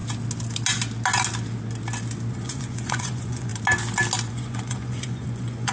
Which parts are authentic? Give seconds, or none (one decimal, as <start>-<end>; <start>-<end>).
0.0-2.3; 3.5-4.3